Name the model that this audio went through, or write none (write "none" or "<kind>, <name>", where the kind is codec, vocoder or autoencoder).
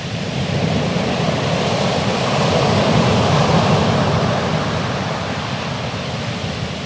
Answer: vocoder, BigVGAN v2